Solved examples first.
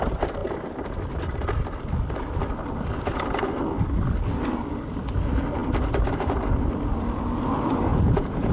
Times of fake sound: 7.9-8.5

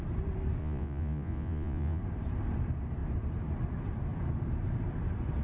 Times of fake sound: 0.6-2.0

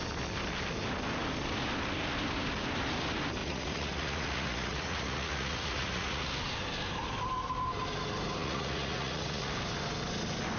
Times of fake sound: 3.4-6.3; 8.4-9.5

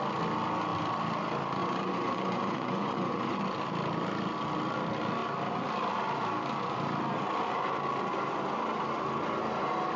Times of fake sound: 1.6-3.4

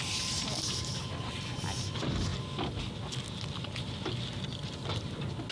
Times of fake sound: none